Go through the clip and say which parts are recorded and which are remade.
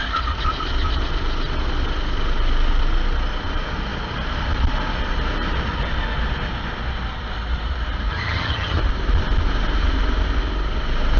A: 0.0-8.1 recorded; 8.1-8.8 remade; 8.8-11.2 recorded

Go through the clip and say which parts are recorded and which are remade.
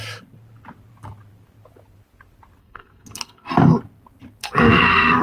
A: 0.0-2.6 recorded; 2.6-3.5 remade; 3.5-4.4 recorded; 4.4-5.2 remade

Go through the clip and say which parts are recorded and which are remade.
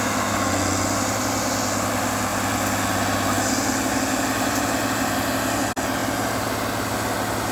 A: 0.0-7.5 recorded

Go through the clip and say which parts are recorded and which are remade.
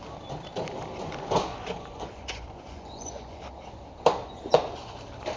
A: 0.0-1.5 recorded; 1.5-3.4 remade; 3.4-4.2 recorded; 4.2-5.0 remade; 5.0-5.4 recorded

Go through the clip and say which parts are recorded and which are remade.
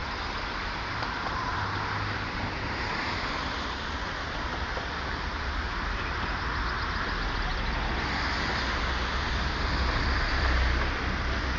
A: 0.0-7.5 remade; 7.5-9.1 recorded; 9.1-11.6 remade